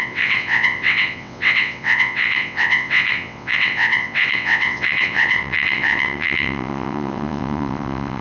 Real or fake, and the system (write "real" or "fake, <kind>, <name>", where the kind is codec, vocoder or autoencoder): fake, vocoder, WaveNeXt